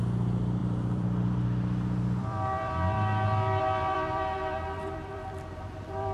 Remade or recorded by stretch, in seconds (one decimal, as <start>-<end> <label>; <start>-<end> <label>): 0.0-6.1 remade